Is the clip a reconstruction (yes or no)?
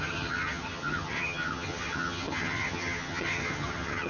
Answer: yes